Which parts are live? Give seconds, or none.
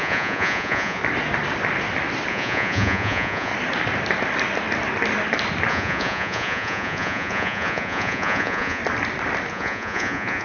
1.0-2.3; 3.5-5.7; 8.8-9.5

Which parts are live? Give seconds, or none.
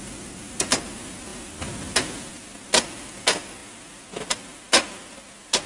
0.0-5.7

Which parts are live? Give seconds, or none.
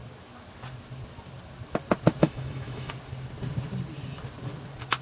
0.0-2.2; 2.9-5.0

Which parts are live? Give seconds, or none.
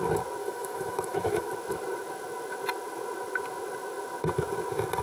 0.0-0.4; 1.5-5.0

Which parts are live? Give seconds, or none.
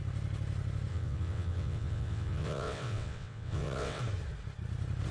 0.0-0.9; 4.0-5.1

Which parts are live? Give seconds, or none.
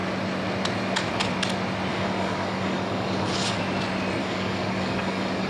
0.0-1.9; 3.6-4.2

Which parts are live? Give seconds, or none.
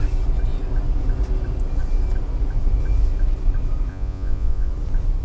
0.0-3.9; 4.7-5.2